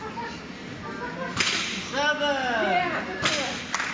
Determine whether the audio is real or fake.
real